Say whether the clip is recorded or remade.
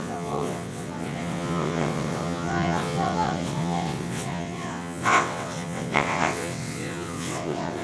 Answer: remade